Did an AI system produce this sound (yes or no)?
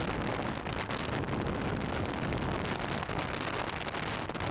no